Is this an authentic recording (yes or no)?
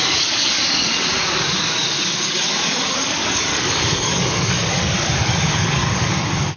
no